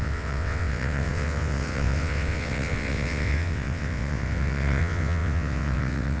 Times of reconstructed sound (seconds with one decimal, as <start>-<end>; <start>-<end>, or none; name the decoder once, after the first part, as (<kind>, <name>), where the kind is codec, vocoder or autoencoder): 0.0-6.2 (vocoder, WaveNeXt)